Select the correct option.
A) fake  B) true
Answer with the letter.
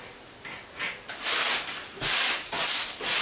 B